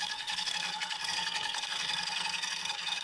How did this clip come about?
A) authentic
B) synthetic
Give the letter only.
B